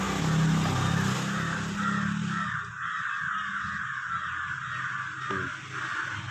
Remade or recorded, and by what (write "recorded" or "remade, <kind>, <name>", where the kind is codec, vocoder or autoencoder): recorded